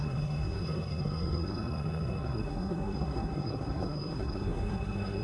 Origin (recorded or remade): remade